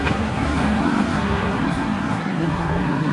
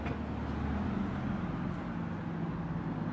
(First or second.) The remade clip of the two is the first